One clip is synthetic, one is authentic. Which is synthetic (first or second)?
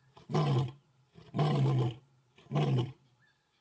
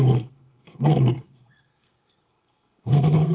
second